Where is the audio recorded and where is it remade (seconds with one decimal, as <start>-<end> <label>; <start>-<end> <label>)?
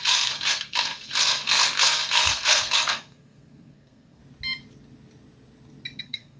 0.0-4.2 remade; 4.2-6.0 recorded; 6.0-6.4 remade